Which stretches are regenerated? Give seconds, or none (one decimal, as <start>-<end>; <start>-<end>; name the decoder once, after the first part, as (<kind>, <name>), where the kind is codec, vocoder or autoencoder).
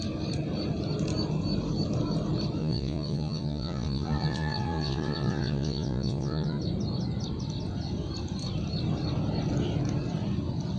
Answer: 2.6-6.6 (vocoder, Vocos)